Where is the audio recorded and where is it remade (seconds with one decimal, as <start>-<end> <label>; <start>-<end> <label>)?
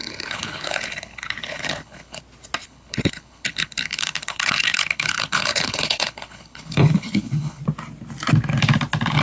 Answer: 0.0-2.2 remade; 2.2-2.6 recorded; 2.6-7.6 remade; 7.6-9.2 recorded